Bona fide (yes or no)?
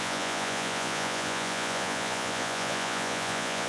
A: no